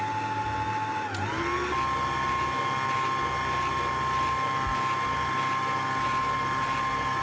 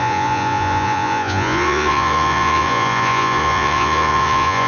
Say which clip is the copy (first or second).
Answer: second